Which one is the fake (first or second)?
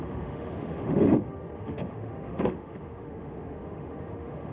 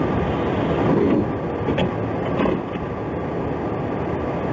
first